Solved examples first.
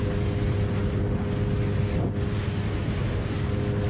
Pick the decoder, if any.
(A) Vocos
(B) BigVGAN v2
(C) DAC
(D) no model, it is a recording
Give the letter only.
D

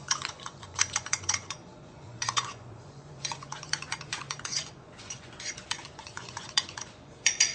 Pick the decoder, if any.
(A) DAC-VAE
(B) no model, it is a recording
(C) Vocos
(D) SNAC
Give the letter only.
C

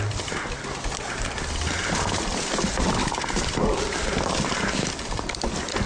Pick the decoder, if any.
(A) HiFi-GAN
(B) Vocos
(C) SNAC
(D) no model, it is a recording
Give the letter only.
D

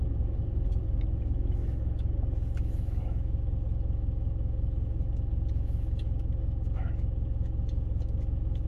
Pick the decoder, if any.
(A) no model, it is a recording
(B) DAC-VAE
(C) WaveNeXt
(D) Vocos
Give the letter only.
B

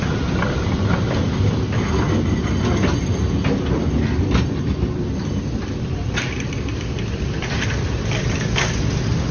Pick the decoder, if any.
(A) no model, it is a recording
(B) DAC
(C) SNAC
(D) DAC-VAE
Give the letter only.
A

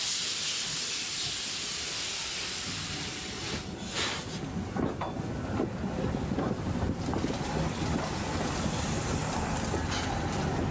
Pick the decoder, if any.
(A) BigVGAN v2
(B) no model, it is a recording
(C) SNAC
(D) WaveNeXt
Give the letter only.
B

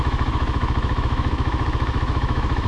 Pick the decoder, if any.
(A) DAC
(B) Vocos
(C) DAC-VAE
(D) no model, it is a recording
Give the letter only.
C